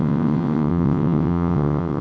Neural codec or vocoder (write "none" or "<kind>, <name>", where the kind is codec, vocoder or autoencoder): vocoder, WaveNeXt